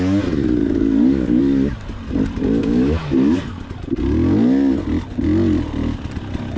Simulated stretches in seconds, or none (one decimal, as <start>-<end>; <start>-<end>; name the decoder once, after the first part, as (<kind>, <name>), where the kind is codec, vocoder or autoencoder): 0.6-1.4 (codec, DAC); 2.6-3.6